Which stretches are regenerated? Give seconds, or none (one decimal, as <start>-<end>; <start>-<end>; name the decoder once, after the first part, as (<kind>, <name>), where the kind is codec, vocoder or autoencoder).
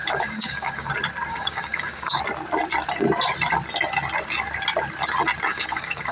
0.0-0.9 (codec, DAC); 1.3-2.2; 5.5-6.1